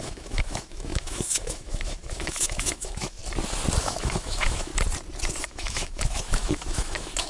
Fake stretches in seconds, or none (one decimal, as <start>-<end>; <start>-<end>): 0.0-3.2; 3.8-4.7; 5.4-7.3